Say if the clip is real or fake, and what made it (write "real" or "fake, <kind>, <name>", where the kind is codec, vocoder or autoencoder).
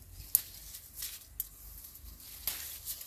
real